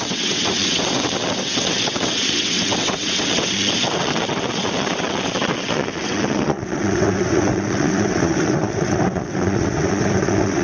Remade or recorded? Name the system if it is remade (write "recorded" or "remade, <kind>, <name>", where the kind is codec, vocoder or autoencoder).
remade, vocoder, WaveNeXt